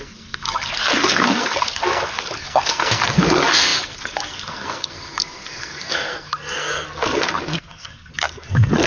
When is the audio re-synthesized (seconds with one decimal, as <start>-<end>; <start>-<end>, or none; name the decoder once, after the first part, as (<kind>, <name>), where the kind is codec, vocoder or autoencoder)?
0.0-8.9 (codec, SNAC)